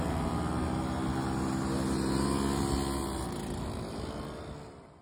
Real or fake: real